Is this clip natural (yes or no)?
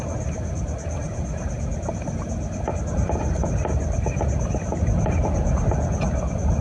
yes